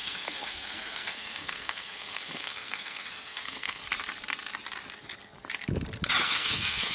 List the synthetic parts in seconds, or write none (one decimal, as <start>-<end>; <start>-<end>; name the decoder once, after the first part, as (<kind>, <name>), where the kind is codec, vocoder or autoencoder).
0.0-3.8 (codec, SNAC); 6.2-6.9